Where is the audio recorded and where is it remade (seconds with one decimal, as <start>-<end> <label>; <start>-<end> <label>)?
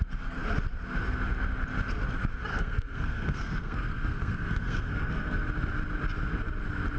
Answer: 0.0-2.5 recorded; 2.5-5.4 remade; 5.4-7.0 recorded